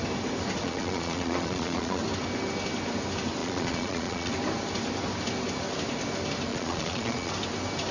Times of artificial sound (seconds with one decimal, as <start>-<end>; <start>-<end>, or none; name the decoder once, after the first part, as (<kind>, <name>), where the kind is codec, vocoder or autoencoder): 0.6-2.0 (vocoder, Vocos); 3.4-4.3; 6.5-7.3